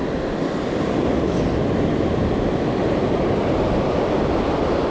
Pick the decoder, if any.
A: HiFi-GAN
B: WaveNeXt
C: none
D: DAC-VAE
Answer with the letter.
C